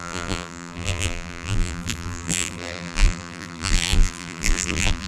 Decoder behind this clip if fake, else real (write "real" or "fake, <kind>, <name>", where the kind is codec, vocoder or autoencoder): fake, vocoder, BigVGAN v2